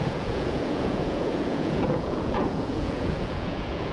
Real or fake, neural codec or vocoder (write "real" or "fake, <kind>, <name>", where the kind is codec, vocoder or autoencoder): fake, vocoder, Vocos